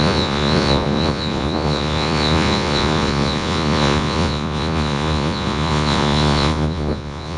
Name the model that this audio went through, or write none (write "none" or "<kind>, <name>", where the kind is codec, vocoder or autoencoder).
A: vocoder, Vocos